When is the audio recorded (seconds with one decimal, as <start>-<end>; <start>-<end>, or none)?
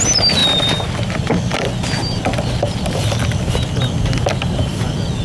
0.0-5.2